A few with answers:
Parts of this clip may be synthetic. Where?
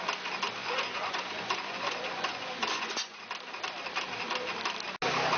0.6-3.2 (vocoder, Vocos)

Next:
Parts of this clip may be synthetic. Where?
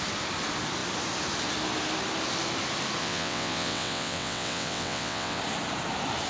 3.0-5.4 (vocoder, WaveNeXt)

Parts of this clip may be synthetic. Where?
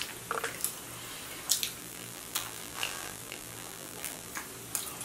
1.8-4.3 (vocoder, BigVGAN v2)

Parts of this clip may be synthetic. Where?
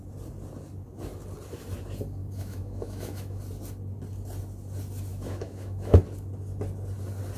2.2-3.4 (autoencoder, DAC-VAE); 5.1-6.0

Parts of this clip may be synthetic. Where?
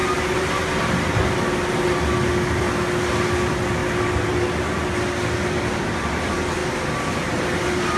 none